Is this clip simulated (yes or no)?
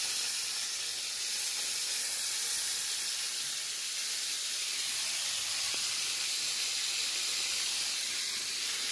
no